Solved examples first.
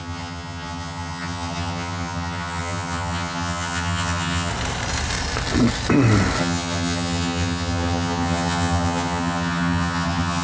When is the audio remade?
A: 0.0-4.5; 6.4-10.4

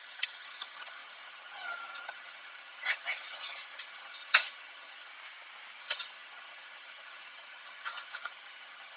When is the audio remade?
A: 0.0-5.1; 5.8-9.0